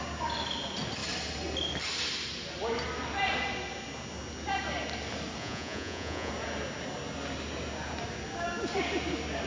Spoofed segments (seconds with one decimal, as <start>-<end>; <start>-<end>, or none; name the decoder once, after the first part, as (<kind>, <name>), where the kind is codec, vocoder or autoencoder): 5.4-6.3 (vocoder, Vocos)